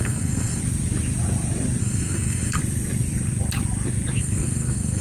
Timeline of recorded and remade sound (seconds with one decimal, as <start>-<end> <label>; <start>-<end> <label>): 0.0-0.6 remade; 0.6-1.8 recorded; 1.8-2.6 remade; 2.6-4.2 recorded; 4.2-5.0 remade